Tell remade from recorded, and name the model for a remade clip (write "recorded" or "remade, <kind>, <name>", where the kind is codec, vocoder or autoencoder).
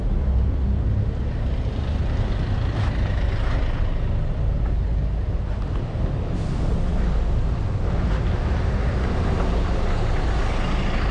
recorded